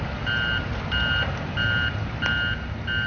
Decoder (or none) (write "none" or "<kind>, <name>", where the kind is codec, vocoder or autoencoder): none